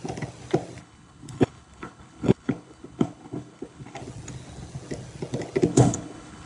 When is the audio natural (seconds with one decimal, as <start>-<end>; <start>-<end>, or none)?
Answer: 0.0-0.8; 4.0-5.7